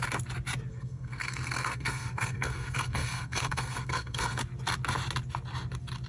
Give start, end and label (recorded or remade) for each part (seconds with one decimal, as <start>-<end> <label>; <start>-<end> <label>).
0.0-0.7 recorded; 0.7-4.4 remade; 4.4-6.1 recorded